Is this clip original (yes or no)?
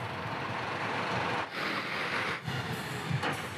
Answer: yes